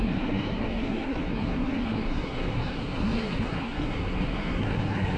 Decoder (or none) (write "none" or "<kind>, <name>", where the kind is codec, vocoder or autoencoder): codec, SNAC